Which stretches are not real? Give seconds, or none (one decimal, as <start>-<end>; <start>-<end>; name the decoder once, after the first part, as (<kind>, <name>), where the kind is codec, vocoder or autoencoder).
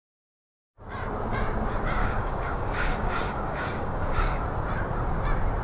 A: 2.0-4.4 (codec, DAC)